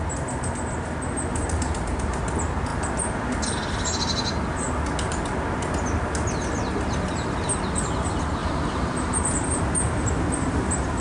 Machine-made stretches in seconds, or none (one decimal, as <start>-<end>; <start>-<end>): 1.3-2.2; 8.4-9.6